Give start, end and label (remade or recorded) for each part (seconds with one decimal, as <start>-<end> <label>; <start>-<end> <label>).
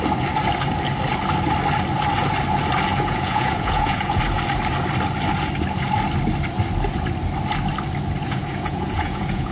0.0-2.9 recorded; 2.9-4.2 remade; 4.2-8.2 recorded; 8.2-9.5 remade